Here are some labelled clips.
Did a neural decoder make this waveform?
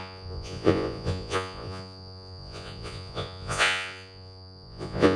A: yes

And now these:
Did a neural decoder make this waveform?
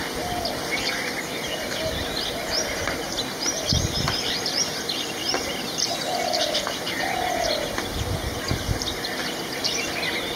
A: yes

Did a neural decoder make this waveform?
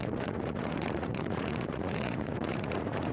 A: yes